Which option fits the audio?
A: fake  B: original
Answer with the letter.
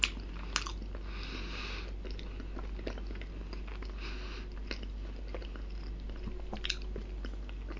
B